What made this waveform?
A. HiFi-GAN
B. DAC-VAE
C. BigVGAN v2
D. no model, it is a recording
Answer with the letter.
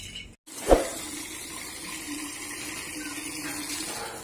D